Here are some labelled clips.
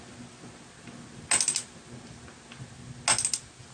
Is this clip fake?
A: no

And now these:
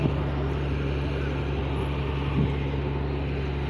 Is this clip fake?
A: no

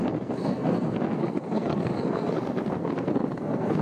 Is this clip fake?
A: yes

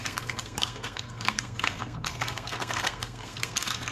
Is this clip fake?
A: yes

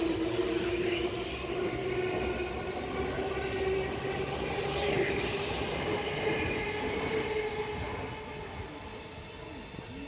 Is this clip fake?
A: no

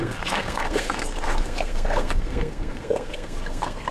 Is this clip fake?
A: yes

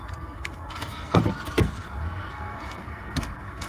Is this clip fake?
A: yes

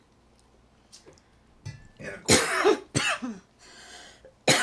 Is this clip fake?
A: no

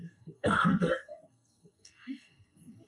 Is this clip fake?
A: yes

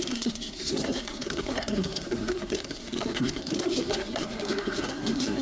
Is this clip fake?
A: yes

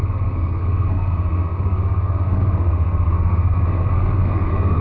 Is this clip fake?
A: yes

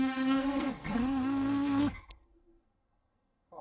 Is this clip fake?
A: yes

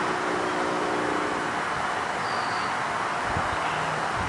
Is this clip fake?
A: no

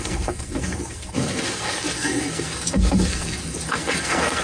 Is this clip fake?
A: yes